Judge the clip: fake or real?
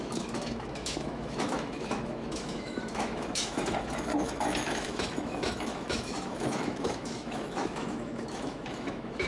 fake